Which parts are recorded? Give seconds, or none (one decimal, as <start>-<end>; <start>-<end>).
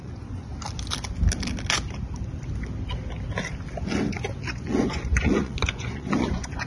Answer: 0.5-4.5